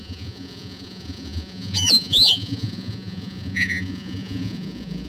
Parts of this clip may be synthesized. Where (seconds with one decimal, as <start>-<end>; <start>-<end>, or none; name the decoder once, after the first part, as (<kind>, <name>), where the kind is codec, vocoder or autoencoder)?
0.0-5.1 (vocoder, Vocos)